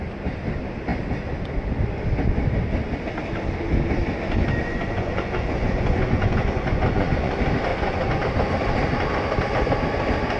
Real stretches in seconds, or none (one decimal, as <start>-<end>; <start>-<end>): 0.0-4.6; 7.3-7.7; 8.2-10.4